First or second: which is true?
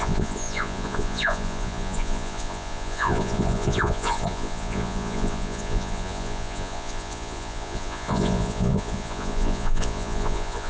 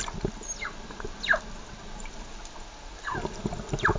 second